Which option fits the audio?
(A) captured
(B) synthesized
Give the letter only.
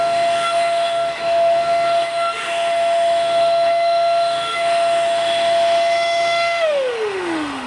B